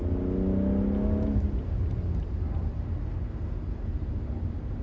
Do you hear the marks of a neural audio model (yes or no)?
no